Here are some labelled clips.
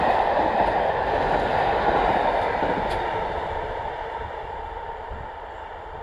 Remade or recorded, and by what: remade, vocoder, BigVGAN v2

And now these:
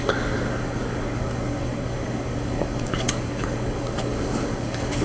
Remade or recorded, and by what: remade, codec, DAC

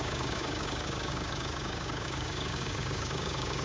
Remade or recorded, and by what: remade, codec, DAC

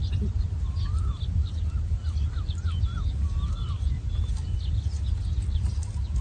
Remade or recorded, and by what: recorded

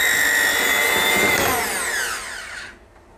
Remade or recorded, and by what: recorded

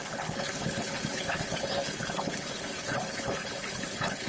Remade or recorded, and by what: remade, codec, HILCodec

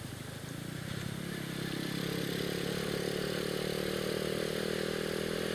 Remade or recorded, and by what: recorded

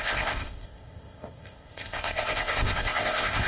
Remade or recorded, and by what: remade, codec, ZipCodec